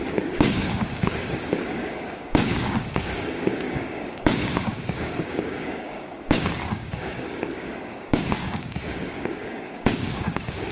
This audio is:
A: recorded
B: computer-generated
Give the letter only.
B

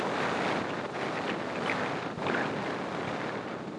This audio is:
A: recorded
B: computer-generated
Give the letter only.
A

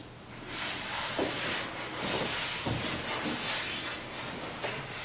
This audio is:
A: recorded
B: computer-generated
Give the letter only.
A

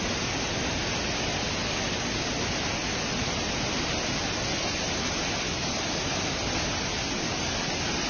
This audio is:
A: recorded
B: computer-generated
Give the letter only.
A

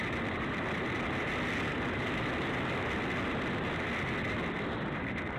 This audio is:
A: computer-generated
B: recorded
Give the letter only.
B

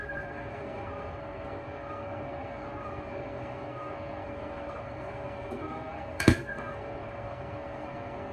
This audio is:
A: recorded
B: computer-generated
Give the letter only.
B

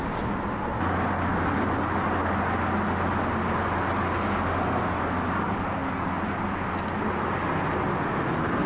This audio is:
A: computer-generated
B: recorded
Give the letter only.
B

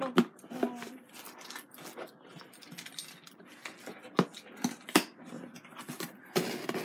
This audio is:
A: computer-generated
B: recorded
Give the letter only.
B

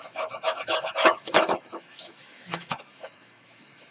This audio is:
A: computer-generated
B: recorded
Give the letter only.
A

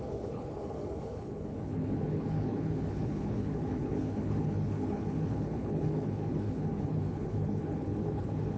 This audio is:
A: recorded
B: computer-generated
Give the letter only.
B